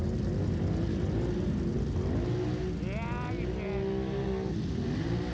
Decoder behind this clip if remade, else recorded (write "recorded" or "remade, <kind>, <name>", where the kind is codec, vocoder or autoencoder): recorded